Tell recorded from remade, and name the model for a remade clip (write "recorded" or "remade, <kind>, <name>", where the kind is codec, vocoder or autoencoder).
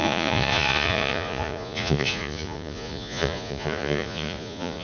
remade, vocoder, Vocos